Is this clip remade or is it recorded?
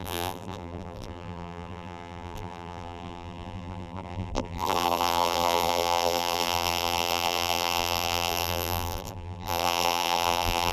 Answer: remade